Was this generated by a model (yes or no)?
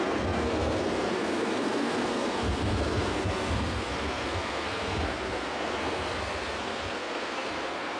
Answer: yes